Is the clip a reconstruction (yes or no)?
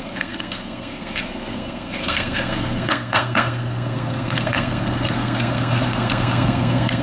yes